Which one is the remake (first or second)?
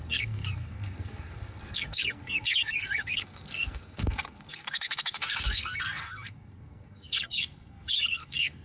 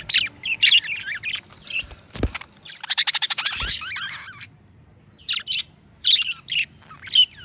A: first